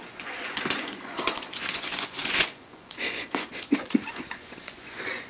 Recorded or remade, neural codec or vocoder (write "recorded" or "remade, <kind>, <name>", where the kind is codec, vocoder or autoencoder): remade, vocoder, Vocos